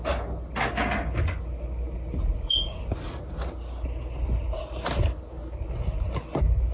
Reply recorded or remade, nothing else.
recorded